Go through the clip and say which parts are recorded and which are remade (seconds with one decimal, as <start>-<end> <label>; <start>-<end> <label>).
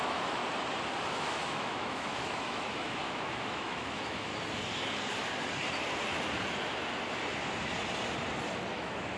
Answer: 0.0-0.4 remade; 0.4-1.1 recorded; 1.1-4.3 remade; 4.3-8.7 recorded; 8.7-9.2 remade